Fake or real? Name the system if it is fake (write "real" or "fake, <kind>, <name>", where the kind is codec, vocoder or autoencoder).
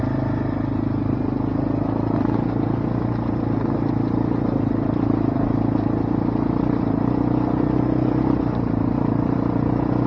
real